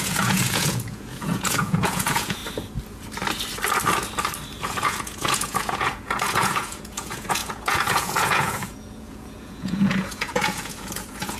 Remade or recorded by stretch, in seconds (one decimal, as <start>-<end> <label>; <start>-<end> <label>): 0.0-2.4 remade; 2.4-4.6 recorded; 4.6-11.4 remade